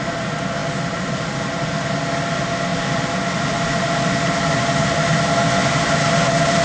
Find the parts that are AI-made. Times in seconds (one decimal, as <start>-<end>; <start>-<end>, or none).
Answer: 2.7-4.6